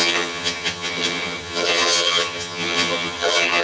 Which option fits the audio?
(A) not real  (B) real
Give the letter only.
A